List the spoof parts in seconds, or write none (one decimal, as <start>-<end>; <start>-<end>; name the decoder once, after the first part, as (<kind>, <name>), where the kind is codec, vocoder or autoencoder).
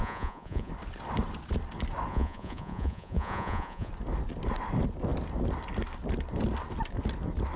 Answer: 0.0-0.7 (vocoder, Vocos); 2.1-3.9